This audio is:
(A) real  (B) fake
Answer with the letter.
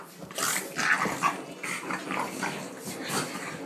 A